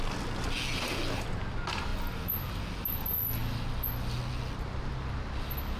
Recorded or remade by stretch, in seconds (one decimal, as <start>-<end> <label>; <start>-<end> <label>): 0.0-5.8 recorded